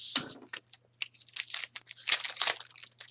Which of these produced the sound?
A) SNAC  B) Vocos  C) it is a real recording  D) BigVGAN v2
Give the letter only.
C